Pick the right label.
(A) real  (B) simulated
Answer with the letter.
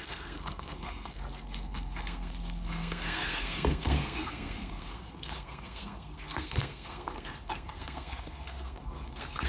B